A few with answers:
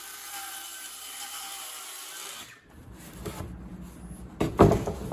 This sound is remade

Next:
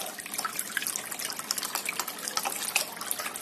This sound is recorded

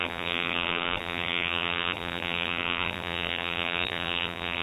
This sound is remade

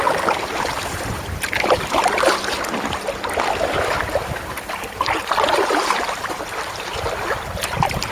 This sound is recorded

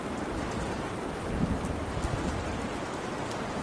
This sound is remade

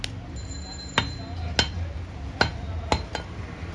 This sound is recorded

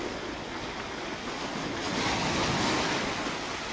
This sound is recorded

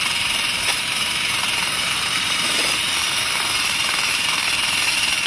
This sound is remade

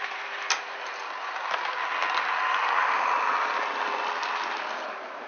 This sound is recorded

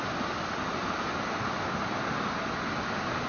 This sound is recorded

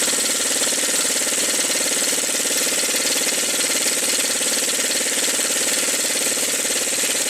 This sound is remade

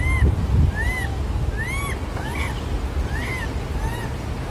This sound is recorded